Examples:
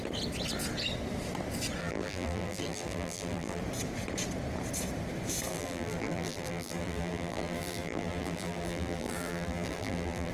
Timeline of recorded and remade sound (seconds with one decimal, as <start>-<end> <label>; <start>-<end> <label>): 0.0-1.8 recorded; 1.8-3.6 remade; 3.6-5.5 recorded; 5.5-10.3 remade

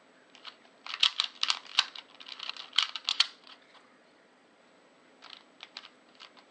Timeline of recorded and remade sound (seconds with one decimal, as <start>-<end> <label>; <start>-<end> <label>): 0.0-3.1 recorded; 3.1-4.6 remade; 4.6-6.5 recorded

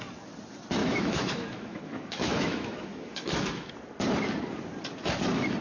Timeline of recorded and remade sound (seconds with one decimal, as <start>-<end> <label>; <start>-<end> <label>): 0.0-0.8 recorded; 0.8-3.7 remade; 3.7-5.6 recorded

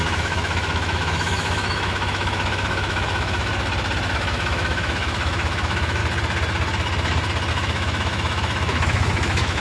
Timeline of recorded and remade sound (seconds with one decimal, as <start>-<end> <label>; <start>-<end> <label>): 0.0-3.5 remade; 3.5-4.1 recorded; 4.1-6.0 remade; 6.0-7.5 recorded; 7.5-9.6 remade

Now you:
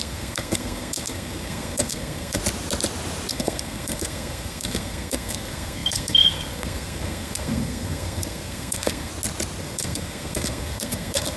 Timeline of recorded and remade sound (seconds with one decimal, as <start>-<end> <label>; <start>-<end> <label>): 0.0-2.4 remade; 2.4-3.3 recorded; 3.3-9.1 remade; 9.1-9.6 recorded; 9.6-11.4 remade